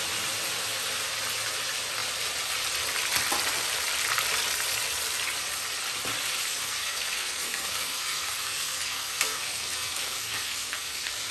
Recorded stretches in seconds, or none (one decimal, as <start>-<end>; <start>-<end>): 0.0-6.5